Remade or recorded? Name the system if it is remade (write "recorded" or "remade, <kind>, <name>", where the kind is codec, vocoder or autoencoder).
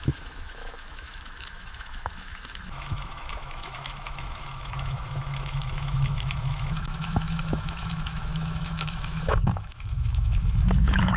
remade, autoencoder, DAC-VAE